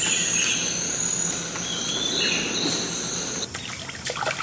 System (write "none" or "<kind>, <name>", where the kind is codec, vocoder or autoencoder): none